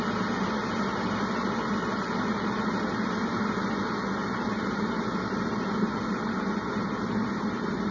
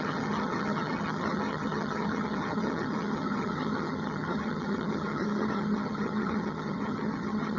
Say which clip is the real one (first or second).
first